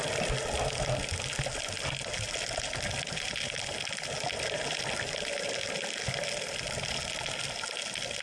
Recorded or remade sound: recorded